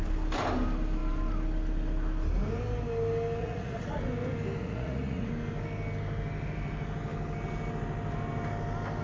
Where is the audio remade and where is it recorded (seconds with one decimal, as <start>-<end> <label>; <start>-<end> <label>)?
0.0-3.4 recorded; 3.4-4.0 remade; 4.0-4.6 recorded; 4.6-5.3 remade; 5.3-9.0 recorded